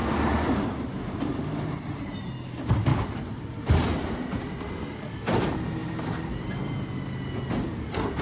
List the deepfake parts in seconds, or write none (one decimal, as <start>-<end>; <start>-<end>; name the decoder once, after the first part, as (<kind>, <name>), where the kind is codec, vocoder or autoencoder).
0.0-2.2 (vocoder, BigVGAN v2); 2.9-4.5; 5.8-6.3

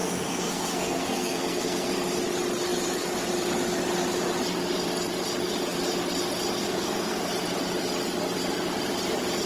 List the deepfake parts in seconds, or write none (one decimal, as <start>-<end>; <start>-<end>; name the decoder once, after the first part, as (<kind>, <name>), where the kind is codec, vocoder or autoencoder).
0.0-1.9 (codec, SNAC); 6.6-7.2

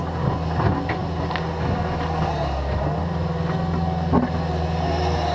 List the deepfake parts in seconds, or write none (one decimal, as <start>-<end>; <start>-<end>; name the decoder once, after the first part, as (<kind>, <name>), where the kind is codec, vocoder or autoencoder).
none

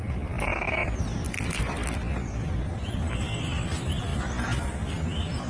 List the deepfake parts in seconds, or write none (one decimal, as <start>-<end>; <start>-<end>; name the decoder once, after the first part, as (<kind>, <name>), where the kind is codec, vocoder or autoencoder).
none

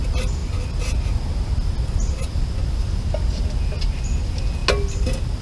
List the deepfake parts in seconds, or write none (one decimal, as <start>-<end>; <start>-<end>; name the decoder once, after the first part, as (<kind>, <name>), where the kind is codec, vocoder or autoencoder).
none

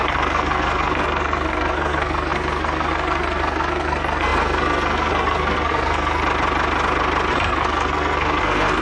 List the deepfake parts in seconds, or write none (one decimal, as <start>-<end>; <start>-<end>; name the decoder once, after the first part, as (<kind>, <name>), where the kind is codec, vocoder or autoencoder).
0.0-6.2 (codec, SNAC); 7.3-8.8

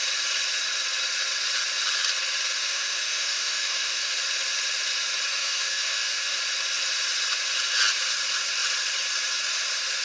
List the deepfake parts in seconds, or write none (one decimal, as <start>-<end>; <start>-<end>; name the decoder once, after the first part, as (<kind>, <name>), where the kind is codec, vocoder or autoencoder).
2.6-4.1 (autoencoder, DAC-VAE); 5.3-6.4

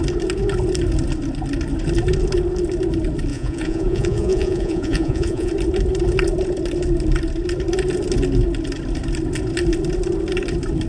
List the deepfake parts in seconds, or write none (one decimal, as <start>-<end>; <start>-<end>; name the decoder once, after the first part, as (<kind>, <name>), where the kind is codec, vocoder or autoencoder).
3.3-5.5 (vocoder, Vocos)